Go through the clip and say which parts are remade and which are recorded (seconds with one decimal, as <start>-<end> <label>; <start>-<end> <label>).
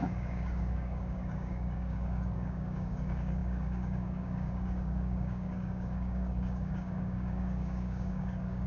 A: 0.0-8.7 remade